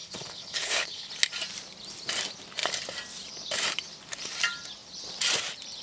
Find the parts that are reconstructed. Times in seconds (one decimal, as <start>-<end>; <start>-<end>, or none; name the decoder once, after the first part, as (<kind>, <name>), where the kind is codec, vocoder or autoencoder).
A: 0.0-1.1 (codec, HILCodec)